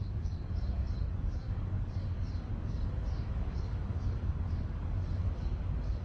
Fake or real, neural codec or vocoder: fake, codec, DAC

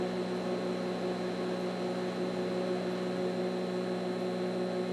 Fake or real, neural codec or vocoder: real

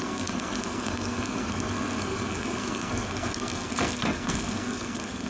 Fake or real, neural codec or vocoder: fake, codec, SNAC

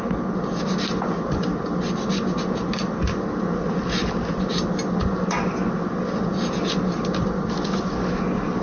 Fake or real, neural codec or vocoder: real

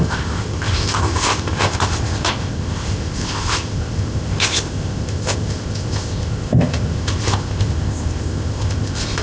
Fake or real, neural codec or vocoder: fake, codec, ZipCodec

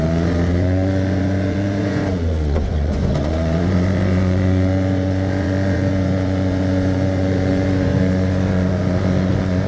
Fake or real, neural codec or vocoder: fake, vocoder, Vocos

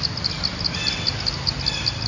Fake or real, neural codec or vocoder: real